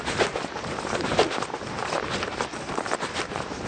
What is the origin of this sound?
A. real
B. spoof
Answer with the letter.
A